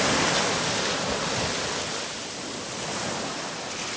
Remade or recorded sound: recorded